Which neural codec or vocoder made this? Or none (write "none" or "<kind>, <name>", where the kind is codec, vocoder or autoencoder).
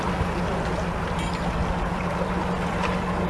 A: none